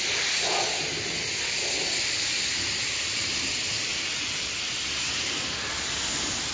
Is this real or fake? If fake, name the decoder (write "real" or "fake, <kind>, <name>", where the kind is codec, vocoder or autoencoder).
real